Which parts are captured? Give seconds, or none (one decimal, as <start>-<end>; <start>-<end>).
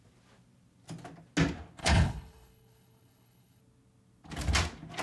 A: 0.0-1.8; 3.6-5.0